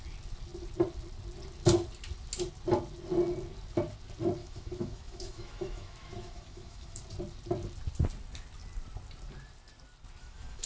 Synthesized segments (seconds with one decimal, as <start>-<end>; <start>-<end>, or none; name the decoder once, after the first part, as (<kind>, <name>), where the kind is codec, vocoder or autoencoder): 4.4-7.0 (autoencoder, DAC-VAE); 10.2-10.7